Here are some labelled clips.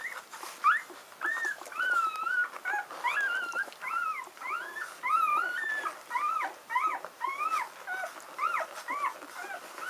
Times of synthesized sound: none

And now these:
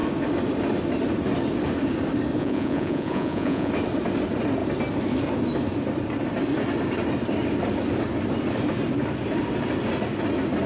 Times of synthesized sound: 2.4-3.7 (vocoder, Vocos)